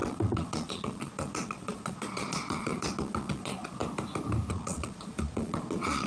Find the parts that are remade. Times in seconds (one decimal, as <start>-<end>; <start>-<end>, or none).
0.0-3.8; 4.5-6.1

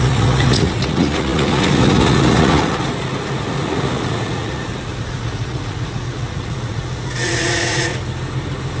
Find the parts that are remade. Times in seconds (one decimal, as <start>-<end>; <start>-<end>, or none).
0.0-7.9